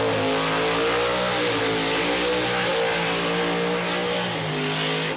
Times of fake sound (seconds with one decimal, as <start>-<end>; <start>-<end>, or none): none